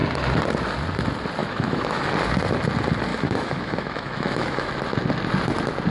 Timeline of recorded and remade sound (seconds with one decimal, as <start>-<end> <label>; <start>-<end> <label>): 0.0-1.4 recorded; 1.4-2.1 remade; 2.1-3.1 recorded; 3.1-4.7 remade; 4.7-5.9 recorded